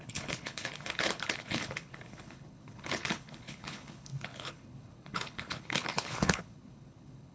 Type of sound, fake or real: fake